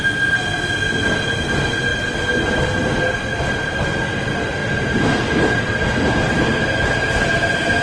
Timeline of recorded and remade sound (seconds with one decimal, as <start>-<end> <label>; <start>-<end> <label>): 0.0-7.8 recorded